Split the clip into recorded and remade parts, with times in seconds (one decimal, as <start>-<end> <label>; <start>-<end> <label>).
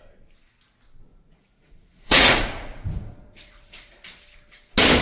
0.0-1.1 recorded; 1.1-4.1 remade; 4.1-5.0 recorded